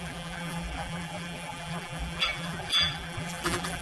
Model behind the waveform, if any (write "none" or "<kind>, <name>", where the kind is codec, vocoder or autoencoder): vocoder, BigVGAN v2